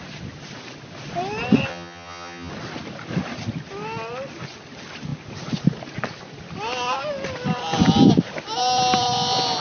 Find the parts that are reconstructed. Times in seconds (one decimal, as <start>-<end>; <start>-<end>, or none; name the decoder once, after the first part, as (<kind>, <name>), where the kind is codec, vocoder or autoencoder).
1.7-2.5 (vocoder, HiFi-GAN)